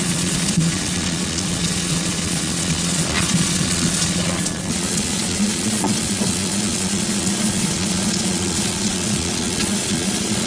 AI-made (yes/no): yes